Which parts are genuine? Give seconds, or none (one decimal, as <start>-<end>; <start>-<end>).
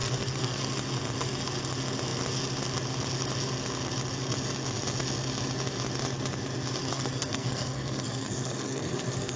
0.6-6.8